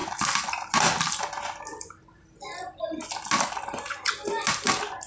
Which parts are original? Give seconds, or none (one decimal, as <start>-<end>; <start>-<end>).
0.0-5.1